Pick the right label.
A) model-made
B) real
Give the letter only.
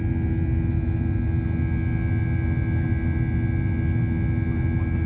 B